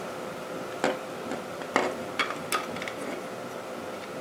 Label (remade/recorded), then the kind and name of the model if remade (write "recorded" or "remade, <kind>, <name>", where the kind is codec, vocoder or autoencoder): recorded